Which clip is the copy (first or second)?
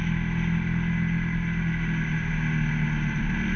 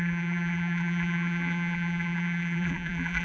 second